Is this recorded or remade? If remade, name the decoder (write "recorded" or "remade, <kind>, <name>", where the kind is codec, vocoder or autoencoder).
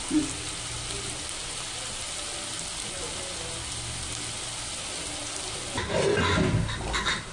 recorded